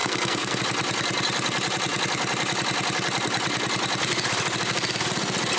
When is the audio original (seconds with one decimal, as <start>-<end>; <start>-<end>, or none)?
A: 0.6-5.6

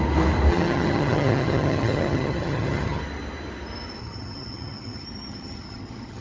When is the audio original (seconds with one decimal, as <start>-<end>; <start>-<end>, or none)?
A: 0.0-0.5; 3.0-4.0

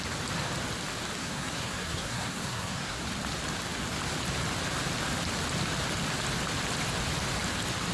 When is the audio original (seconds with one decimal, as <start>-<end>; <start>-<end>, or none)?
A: 0.0-1.2; 3.0-7.9

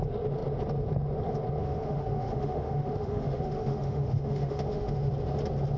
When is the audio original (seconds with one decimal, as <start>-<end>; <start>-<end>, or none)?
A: 0.0-1.6; 5.1-5.8

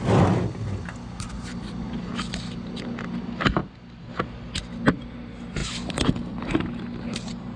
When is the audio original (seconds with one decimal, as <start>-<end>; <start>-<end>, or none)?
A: 0.0-3.6; 4.1-7.6

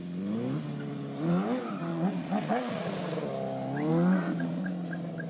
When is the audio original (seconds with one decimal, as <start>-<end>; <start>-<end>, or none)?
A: 0.0-1.9; 2.9-3.9; 4.6-5.3

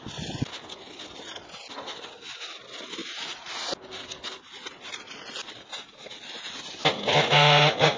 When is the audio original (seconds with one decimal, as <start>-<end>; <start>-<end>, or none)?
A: 0.0-8.0

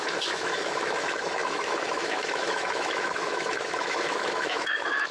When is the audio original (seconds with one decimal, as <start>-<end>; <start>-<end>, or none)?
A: none